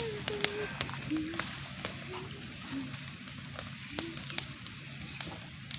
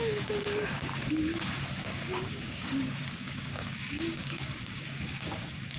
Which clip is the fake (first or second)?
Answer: second